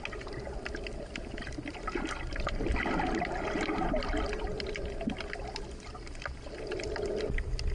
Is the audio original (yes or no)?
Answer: yes